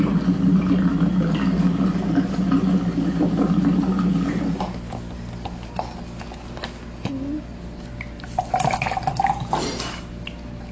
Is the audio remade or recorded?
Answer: recorded